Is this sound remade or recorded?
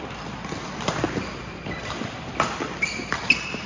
remade